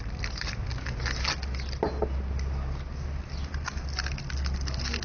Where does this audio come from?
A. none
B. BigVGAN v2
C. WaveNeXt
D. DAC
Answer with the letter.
A